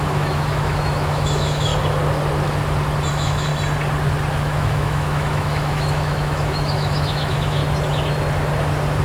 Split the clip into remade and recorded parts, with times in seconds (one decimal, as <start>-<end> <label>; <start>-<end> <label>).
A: 0.0-1.7 remade; 1.7-3.1 recorded; 3.1-3.5 remade; 3.5-4.4 recorded; 4.4-7.6 remade; 7.6-9.0 recorded

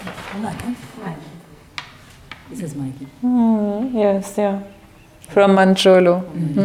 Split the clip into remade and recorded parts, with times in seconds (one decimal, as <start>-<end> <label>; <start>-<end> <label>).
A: 0.0-0.4 recorded; 0.4-1.7 remade; 1.7-6.6 recorded

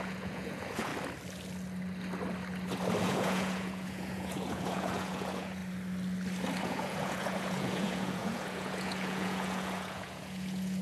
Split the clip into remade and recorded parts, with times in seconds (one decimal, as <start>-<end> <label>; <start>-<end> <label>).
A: 0.0-0.9 remade; 0.9-3.0 recorded; 3.0-5.6 remade; 5.6-6.6 recorded; 6.6-10.8 remade

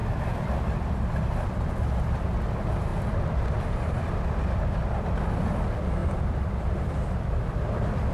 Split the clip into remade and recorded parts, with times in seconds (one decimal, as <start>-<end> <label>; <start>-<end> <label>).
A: 0.0-1.7 remade; 1.7-2.9 recorded; 2.9-4.1 remade; 4.1-6.0 recorded; 6.0-7.3 remade; 7.3-8.1 recorded